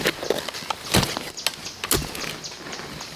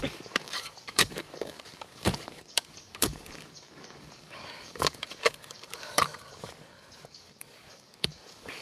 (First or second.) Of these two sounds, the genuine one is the first